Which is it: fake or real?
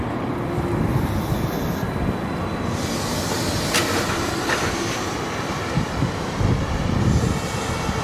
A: real